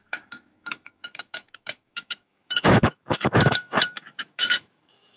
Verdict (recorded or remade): remade